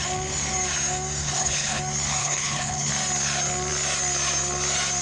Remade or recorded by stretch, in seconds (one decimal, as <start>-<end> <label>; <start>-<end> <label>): 0.0-1.2 recorded; 1.2-1.8 remade; 1.8-2.2 recorded; 2.2-2.9 remade; 2.9-5.0 recorded